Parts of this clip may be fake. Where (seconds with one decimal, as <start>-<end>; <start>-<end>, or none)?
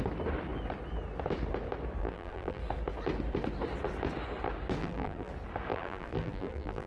2.0-2.6; 4.8-5.3; 5.7-6.9